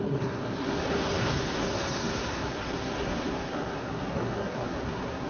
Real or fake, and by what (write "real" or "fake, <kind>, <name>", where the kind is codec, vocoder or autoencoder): fake, codec, SNAC